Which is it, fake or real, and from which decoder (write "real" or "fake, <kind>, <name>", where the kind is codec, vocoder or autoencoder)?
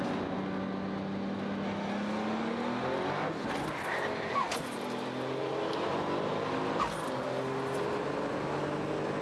real